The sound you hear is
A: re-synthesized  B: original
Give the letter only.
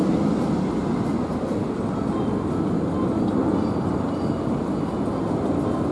B